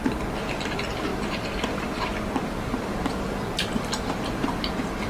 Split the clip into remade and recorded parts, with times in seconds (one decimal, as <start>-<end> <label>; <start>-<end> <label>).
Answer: 0.0-5.1 recorded